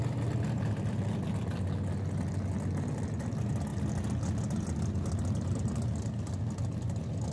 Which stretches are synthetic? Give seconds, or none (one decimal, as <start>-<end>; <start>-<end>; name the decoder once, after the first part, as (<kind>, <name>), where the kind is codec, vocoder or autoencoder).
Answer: none